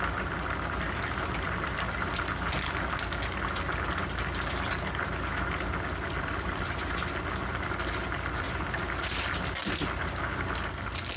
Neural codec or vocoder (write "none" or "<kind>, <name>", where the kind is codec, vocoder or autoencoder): none